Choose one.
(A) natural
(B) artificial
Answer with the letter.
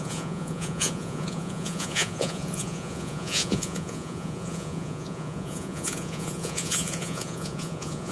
B